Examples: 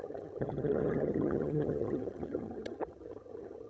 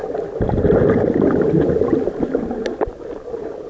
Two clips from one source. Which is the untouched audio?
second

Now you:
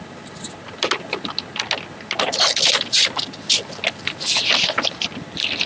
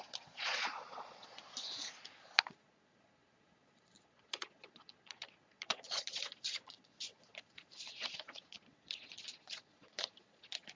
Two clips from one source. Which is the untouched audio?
first